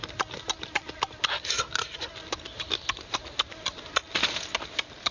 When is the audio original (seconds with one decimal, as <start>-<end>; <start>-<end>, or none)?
0.0-5.1